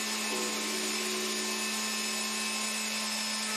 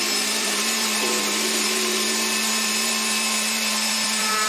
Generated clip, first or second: second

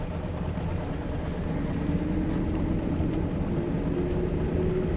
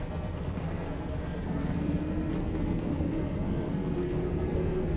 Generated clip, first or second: second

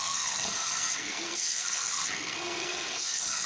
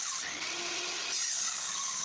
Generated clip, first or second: first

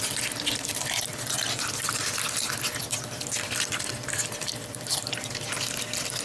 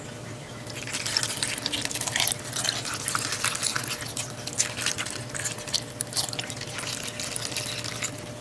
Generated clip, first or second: first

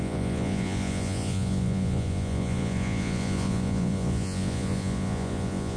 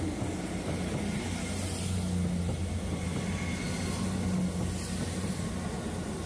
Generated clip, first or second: first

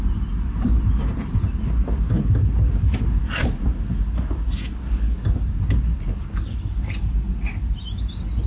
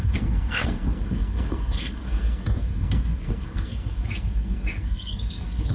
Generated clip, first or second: second